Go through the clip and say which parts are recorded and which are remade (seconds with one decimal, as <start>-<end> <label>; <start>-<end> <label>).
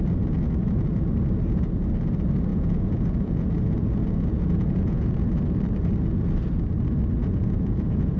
0.0-2.5 recorded; 2.5-5.2 remade; 5.2-7.2 recorded; 7.2-8.2 remade